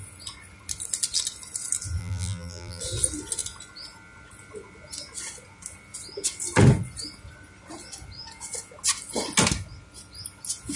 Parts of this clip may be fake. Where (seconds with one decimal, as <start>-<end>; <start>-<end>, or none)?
2.0-2.8